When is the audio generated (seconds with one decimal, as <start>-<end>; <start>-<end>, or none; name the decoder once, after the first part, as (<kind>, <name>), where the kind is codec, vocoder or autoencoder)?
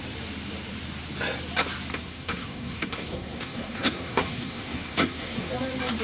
1.9-5.5 (codec, SNAC)